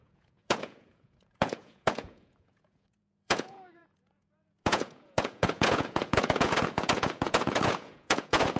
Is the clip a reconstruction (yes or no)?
yes